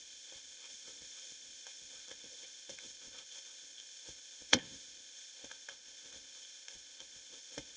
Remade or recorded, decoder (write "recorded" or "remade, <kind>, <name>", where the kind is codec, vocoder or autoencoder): remade, codec, ZipCodec